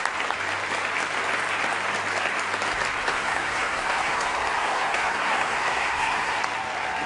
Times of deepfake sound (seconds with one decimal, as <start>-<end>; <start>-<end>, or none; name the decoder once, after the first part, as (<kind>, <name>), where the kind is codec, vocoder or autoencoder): 3.1-6.4 (codec, SNAC)